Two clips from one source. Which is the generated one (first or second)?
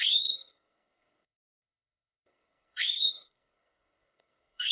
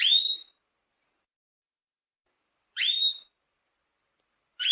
first